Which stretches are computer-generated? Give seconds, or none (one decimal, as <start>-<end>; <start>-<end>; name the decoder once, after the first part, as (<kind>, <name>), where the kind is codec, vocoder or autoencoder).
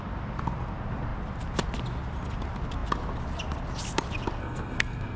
4.4-5.2 (codec, SNAC)